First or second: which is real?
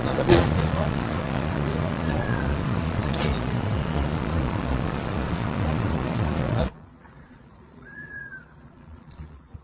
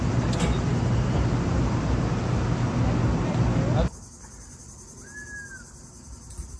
second